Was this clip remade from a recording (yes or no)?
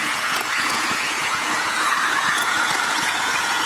yes